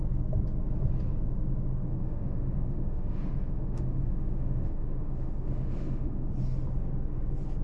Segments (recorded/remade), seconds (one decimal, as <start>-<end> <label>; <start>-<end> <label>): 0.0-1.9 recorded; 1.9-6.3 remade; 6.3-7.6 recorded